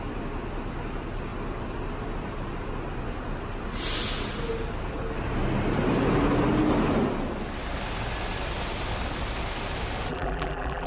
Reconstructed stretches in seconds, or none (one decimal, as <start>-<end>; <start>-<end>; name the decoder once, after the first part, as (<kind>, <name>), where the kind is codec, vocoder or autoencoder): 10.1-10.9 (vocoder, BigVGAN v2)